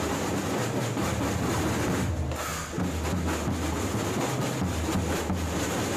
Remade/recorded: recorded